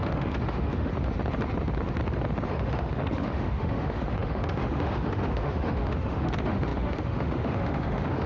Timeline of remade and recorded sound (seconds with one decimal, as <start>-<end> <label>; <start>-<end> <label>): 0.0-0.9 remade; 0.9-2.5 recorded; 2.5-8.3 remade